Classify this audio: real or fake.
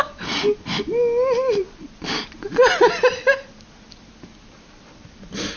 real